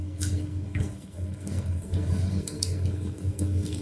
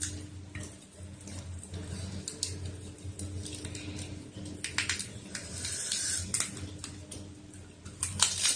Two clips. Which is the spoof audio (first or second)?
first